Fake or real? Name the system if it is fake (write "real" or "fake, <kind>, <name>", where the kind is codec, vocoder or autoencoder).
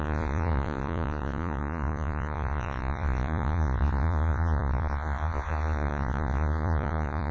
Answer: fake, vocoder, Vocos